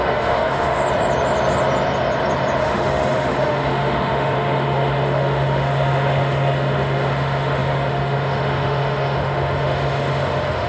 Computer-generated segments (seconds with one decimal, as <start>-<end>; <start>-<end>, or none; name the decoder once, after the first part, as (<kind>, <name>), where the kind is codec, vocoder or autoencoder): 0.0-0.8 (autoencoder, DAC-VAE); 2.6-10.7